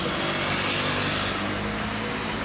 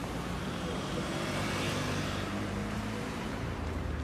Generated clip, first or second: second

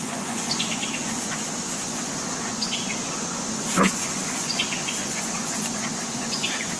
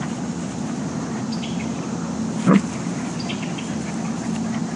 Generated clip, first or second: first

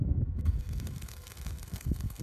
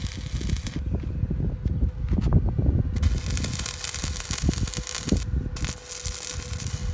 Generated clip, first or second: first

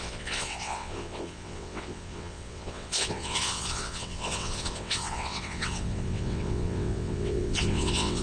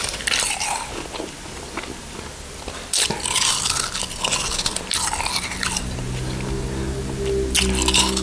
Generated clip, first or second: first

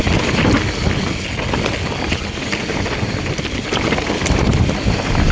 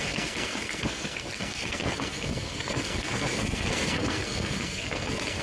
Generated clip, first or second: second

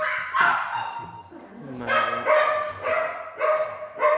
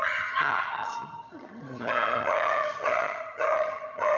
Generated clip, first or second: second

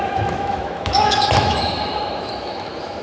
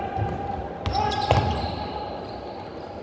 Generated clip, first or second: first